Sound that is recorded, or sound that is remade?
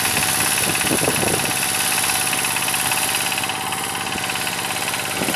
recorded